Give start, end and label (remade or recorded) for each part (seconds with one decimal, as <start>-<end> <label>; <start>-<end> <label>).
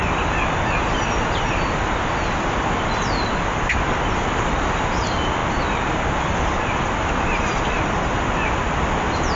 0.0-9.4 recorded